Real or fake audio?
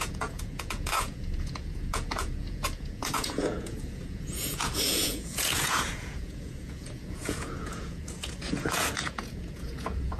fake